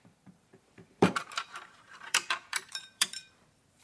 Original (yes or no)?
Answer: no